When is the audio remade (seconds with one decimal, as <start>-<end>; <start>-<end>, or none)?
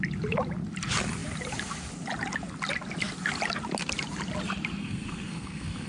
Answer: 4.8-5.9